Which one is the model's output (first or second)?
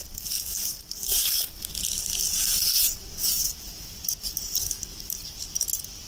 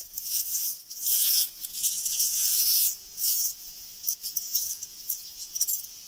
second